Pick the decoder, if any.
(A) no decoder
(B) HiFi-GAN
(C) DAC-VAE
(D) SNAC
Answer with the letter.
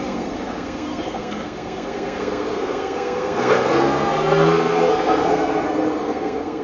D